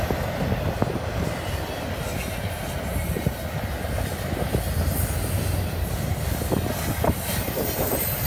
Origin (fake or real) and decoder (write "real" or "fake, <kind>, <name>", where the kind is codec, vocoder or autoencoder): real